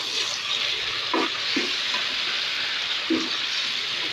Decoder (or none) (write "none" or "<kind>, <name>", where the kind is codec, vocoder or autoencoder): none